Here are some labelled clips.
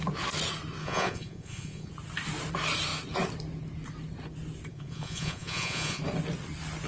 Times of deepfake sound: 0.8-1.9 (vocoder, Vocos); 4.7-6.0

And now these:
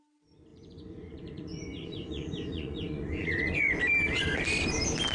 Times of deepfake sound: 0.5-3.6 (vocoder, Vocos)

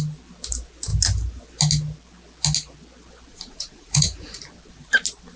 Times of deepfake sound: 3.3-4.4 (vocoder, Vocos)

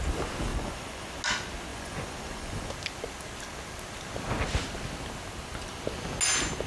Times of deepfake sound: 0.5-1.1 (vocoder, Vocos); 1.7-2.7